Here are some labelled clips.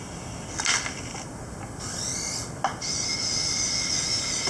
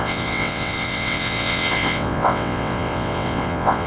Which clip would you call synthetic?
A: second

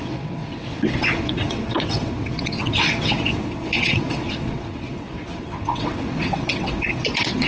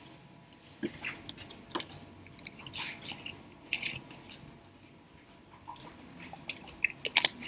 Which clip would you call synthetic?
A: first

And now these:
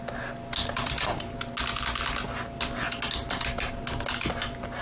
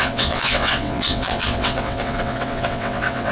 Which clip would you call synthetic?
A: second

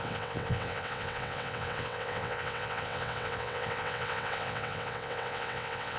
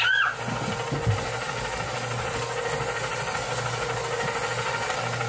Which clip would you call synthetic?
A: first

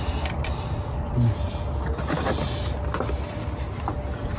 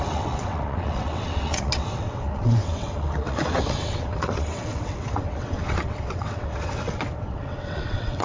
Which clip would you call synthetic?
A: second